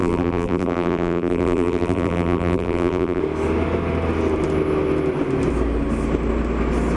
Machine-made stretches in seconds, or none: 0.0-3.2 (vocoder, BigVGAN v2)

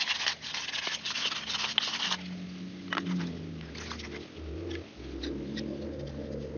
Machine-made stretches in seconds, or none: none

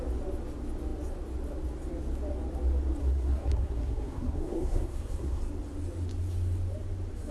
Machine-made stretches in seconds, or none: 3.0-5.4 (codec, SNAC)

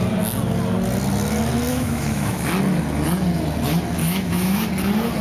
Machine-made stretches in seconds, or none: 1.7-2.5 (autoencoder, DAC-VAE); 4.0-4.7